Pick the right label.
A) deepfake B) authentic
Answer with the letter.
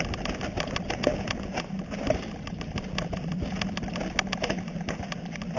B